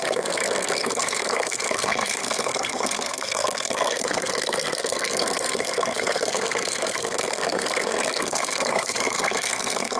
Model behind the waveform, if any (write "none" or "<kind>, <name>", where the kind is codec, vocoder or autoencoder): codec, SNAC